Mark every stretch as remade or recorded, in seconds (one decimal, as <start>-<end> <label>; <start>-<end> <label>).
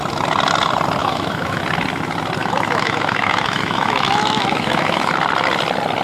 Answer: 0.0-1.0 recorded; 1.0-1.6 remade; 1.6-2.4 recorded; 2.4-5.1 remade; 5.1-6.0 recorded